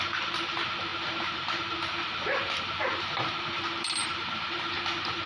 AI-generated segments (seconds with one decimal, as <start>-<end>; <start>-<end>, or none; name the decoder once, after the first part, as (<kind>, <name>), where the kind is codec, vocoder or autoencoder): 0.9-3.6 (vocoder, BigVGAN v2); 4.0-5.3